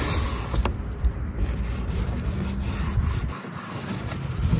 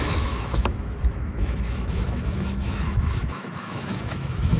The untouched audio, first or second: first